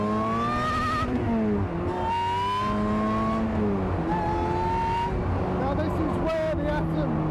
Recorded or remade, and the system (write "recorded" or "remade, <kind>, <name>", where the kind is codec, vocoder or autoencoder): recorded